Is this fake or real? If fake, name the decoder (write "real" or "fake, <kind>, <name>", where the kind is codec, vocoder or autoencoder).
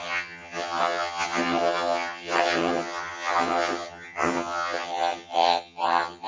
fake, vocoder, HiFi-GAN